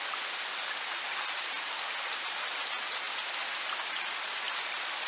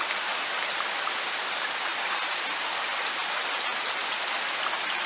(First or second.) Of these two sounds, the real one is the first